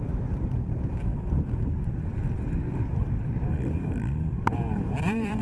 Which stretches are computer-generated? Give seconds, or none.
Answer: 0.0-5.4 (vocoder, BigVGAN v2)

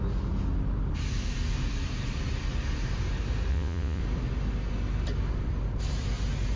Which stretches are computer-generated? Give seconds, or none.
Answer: 3.5-4.0 (vocoder, Vocos)

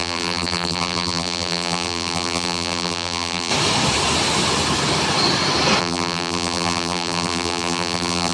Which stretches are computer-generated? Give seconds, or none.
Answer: 0.0-3.5 (vocoder, BigVGAN v2); 5.8-8.3